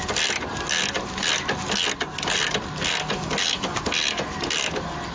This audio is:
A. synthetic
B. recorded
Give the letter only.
B